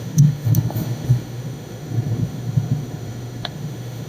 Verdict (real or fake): fake